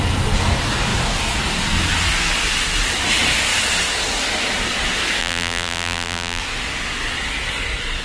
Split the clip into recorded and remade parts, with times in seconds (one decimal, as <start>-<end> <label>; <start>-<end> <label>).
0.0-5.2 recorded; 5.2-6.4 remade; 6.4-8.0 recorded